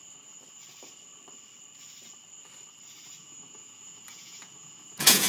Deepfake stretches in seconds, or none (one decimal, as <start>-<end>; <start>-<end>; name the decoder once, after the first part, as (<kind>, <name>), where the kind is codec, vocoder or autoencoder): 3.2-5.3 (vocoder, Vocos)